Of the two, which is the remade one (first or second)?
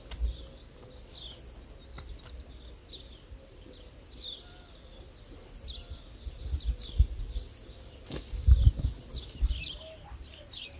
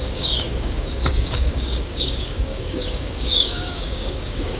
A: second